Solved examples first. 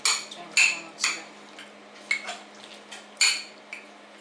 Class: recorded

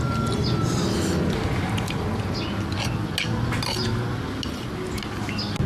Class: recorded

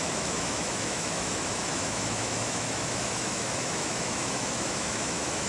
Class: remade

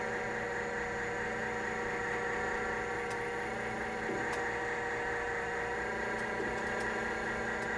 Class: recorded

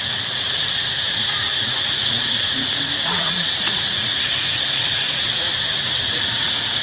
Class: remade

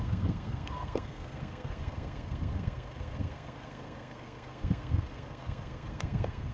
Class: remade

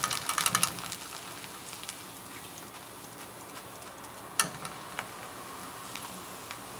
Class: recorded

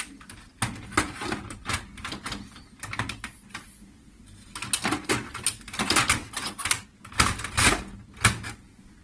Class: recorded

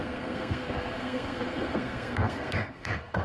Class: remade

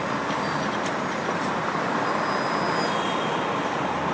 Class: recorded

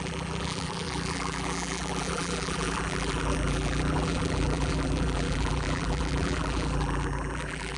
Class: remade